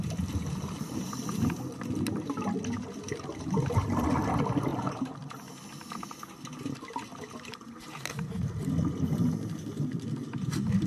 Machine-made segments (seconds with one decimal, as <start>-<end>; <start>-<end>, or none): none